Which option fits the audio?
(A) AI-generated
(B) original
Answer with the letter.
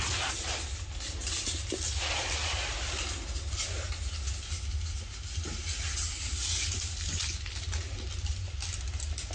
B